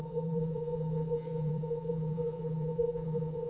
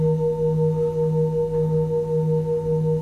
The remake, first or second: first